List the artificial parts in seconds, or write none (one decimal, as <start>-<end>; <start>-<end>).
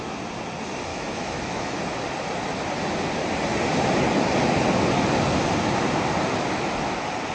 0.9-1.8